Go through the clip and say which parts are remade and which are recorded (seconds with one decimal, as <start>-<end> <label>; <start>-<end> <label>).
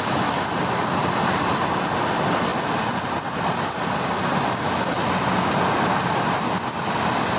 0.0-7.4 recorded